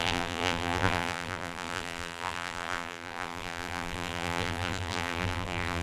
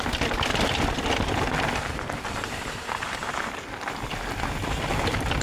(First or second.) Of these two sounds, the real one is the second